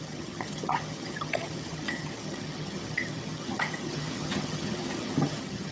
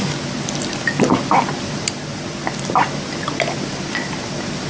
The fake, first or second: first